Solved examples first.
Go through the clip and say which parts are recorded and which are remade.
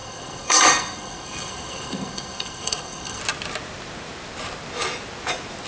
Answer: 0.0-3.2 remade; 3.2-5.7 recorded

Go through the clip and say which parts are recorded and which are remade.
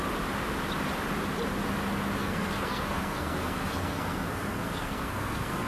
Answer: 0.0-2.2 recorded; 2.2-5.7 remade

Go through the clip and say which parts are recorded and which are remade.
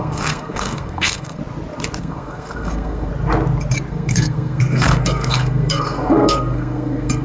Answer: 0.0-1.4 remade; 1.4-2.0 recorded; 2.0-3.1 remade; 3.1-3.9 recorded; 3.9-7.2 remade